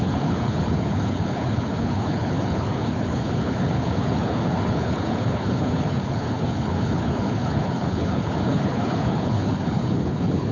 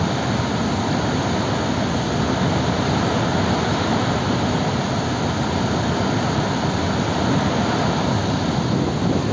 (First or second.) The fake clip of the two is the first